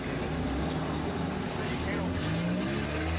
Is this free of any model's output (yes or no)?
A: yes